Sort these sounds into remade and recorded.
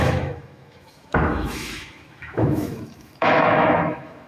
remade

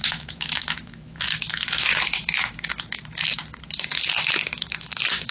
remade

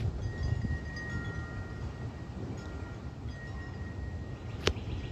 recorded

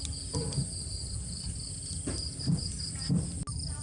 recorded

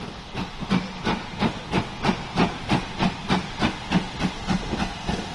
recorded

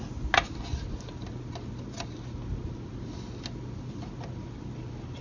recorded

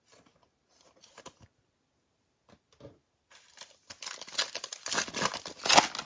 recorded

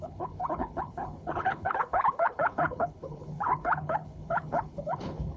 remade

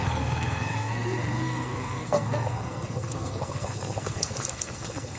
remade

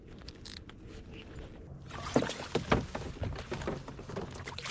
recorded